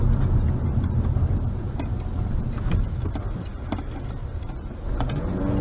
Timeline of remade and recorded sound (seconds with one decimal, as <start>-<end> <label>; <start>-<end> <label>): 0.0-5.6 recorded

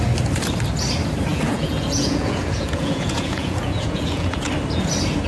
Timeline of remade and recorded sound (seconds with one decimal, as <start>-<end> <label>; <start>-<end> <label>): 0.0-1.3 recorded; 1.3-4.5 remade; 4.5-5.3 recorded

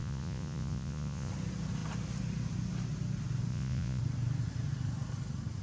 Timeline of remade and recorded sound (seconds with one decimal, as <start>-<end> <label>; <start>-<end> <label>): 0.0-1.3 remade; 1.3-3.5 recorded; 3.5-4.0 remade; 4.0-5.6 recorded

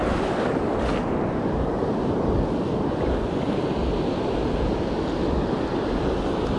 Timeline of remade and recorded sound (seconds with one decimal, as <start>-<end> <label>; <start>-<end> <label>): 0.0-6.6 recorded

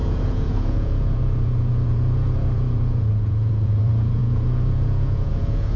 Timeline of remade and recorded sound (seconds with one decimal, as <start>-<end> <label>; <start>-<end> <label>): 0.0-5.8 remade